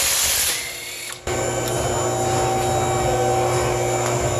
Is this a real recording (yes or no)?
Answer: yes